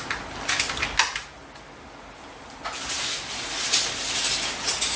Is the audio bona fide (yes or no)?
yes